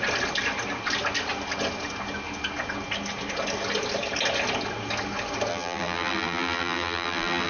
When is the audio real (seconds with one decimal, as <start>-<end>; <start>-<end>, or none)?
0.0-5.5